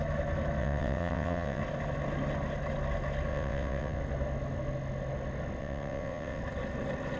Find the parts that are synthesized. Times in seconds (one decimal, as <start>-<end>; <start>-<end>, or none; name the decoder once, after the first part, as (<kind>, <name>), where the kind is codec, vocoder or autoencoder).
0.6-1.6 (vocoder, WaveNeXt); 3.3-4.0; 5.6-6.4